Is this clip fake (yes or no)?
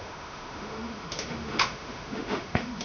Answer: yes